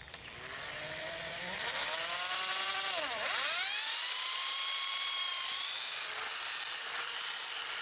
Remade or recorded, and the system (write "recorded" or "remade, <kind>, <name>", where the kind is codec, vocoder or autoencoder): remade, vocoder, BigVGAN v2